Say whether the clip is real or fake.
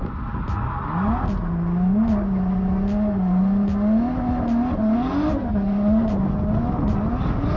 real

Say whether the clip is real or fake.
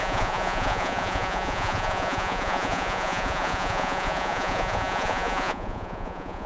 fake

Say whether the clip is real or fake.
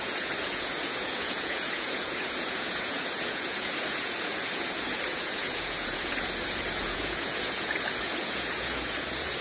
fake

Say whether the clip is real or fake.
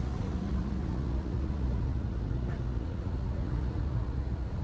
fake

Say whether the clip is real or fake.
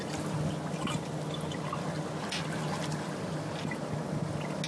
real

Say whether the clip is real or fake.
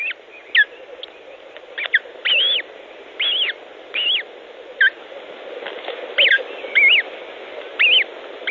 real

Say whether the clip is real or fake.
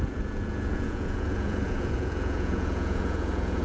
fake